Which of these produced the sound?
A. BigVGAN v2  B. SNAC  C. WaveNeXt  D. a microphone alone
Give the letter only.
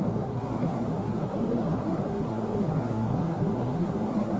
B